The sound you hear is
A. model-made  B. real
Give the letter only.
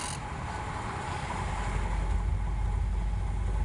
B